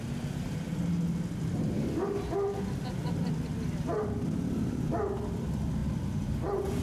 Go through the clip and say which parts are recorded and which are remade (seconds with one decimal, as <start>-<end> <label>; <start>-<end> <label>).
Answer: 0.0-5.8 recorded; 5.8-6.8 remade